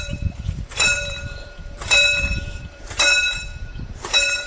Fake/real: fake